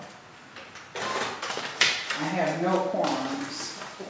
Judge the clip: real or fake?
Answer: real